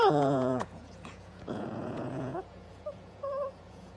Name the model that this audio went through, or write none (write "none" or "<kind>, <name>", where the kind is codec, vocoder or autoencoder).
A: vocoder, Vocos